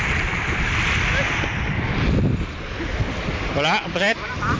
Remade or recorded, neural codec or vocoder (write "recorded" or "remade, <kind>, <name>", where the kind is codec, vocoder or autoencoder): recorded